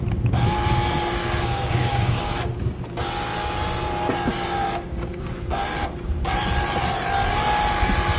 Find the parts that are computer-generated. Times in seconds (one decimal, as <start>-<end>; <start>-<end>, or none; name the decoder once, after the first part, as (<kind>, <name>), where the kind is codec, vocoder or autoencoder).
1.2-2.8 (codec, DAC); 4.3-5.3